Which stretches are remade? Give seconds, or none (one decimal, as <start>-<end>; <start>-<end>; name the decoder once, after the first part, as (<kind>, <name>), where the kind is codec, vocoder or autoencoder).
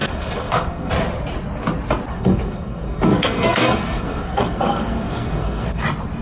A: 0.0-0.9 (codec, SNAC); 2.1-5.8